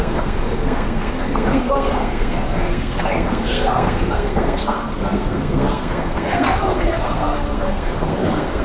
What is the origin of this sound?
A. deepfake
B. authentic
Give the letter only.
A